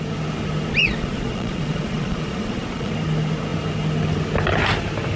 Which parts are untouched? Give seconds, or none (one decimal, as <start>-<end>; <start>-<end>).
0.0-0.8; 2.9-5.2

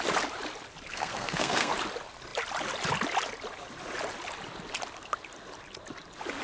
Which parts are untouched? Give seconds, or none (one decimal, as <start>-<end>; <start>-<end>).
0.0-0.9; 1.7-6.4